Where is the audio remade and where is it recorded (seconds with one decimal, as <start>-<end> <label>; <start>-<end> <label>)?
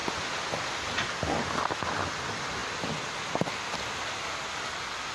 0.0-5.1 recorded